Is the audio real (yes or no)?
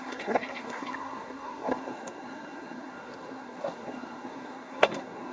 no